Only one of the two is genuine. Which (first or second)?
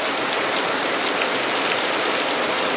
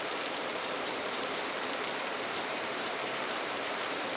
first